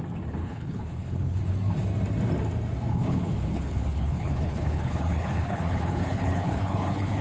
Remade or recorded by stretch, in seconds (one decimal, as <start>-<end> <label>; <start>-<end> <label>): 0.0-0.4 recorded; 0.4-1.4 remade; 1.4-2.9 recorded; 2.9-7.2 remade